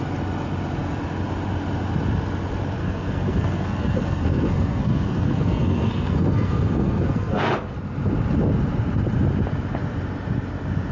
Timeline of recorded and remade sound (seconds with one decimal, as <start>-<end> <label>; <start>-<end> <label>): 0.0-2.8 recorded; 2.8-7.5 remade; 7.5-10.9 recorded